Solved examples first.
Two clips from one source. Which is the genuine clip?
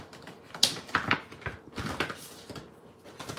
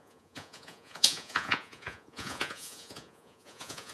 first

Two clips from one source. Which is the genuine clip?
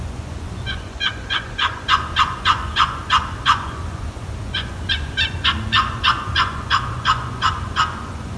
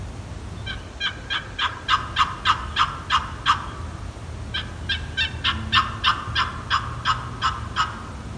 second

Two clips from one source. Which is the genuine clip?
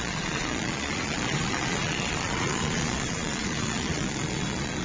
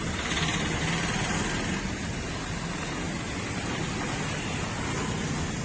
second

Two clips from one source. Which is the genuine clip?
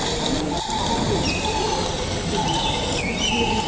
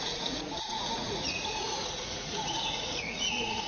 first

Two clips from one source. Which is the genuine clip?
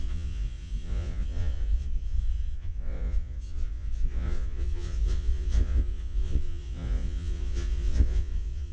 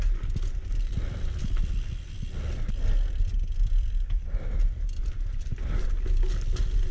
second